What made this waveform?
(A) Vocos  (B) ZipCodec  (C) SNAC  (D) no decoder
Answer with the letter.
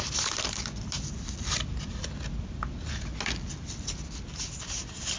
D